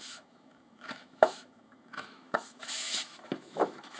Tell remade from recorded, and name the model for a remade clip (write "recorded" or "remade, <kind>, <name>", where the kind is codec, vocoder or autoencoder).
remade, autoencoder, DAC-VAE